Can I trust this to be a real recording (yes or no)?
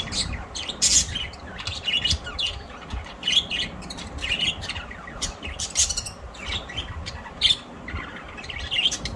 yes